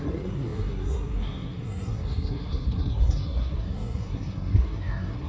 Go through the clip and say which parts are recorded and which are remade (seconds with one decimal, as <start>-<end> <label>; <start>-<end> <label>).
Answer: 0.0-5.3 remade